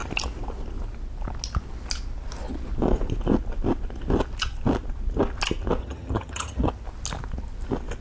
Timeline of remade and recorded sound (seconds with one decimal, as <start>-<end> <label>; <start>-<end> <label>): 0.0-5.8 recorded; 5.8-6.7 remade; 6.7-8.0 recorded